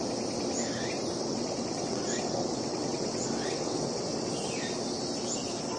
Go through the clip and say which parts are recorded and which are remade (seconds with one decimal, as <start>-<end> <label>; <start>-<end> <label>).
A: 0.0-1.2 recorded; 1.2-4.3 remade; 4.3-5.8 recorded